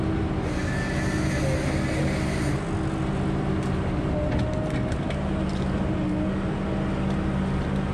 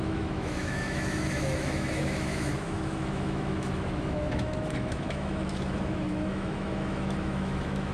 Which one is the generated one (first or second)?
second